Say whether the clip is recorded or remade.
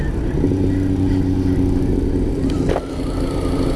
recorded